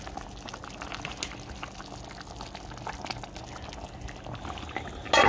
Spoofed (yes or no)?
no